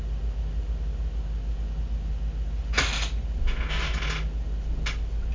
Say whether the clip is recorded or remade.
recorded